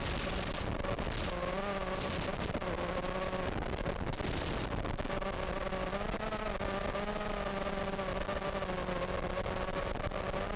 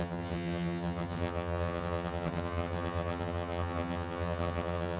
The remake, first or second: second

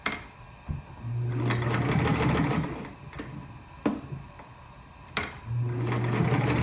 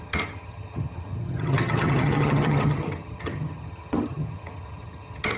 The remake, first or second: second